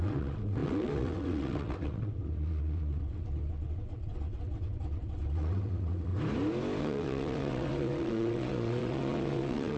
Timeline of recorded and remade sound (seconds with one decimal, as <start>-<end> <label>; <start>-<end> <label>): 0.0-6.1 remade; 6.1-6.8 recorded; 6.8-9.8 remade